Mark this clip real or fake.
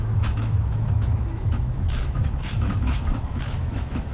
fake